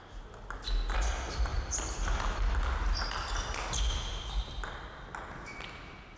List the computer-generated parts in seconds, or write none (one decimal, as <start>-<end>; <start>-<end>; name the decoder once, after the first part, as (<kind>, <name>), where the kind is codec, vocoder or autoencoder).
none